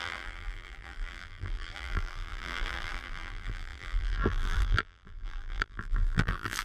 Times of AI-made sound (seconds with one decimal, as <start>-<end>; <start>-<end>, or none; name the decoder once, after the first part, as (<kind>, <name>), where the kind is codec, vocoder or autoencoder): 0.0-6.6 (vocoder, BigVGAN v2)